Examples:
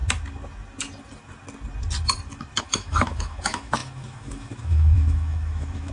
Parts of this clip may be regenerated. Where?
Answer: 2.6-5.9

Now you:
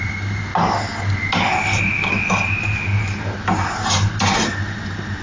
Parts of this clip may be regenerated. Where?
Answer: none

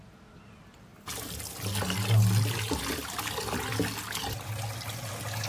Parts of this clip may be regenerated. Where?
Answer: none

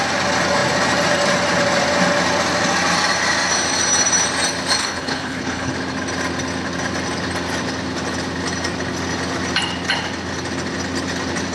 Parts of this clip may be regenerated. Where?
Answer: 4.8-5.7

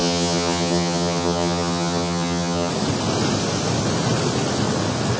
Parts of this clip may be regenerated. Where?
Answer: 0.0-2.7

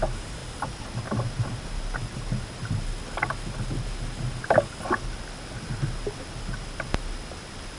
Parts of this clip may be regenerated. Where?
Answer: 0.4-2.2